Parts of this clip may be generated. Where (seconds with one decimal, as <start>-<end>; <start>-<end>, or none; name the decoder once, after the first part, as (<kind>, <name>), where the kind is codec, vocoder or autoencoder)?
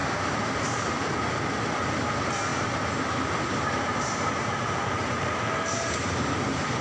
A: 0.0-0.6 (vocoder, BigVGAN v2); 2.5-6.8